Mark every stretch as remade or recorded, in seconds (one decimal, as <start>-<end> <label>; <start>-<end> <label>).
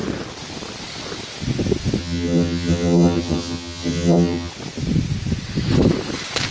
0.0-2.0 recorded; 2.0-4.5 remade; 4.5-6.5 recorded